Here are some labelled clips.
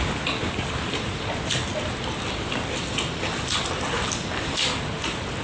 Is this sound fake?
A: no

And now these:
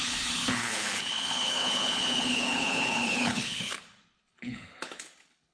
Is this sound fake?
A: yes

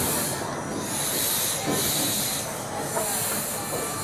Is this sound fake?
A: no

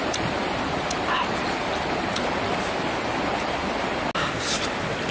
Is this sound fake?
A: no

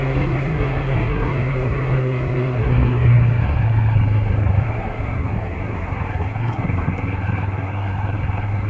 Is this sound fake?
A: yes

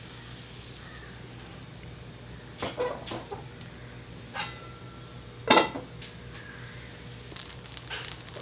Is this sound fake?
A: no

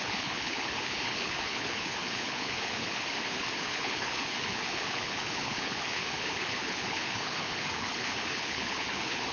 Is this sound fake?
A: yes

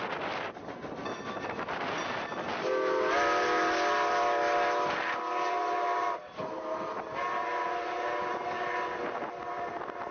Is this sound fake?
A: no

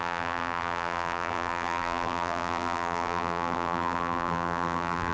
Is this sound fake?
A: yes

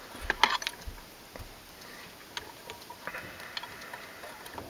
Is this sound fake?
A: no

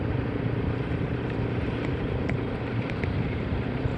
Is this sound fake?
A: yes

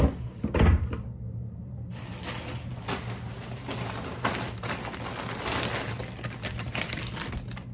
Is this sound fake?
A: no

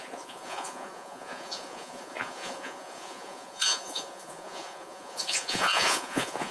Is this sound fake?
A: yes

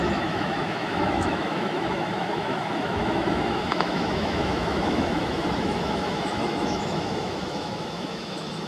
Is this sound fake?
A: yes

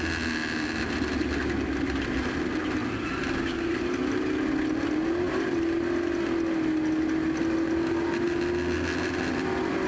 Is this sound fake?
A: no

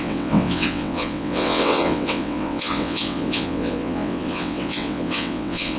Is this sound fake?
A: yes